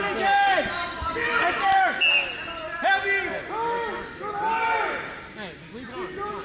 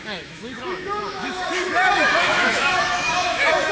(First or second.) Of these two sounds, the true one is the first